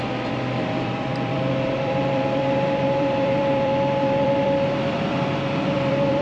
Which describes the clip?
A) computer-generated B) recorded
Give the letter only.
A